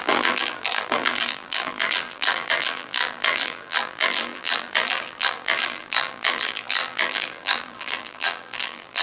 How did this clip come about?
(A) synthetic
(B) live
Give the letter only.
A